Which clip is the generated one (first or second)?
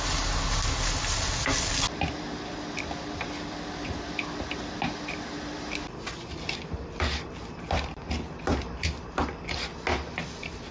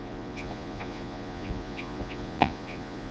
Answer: second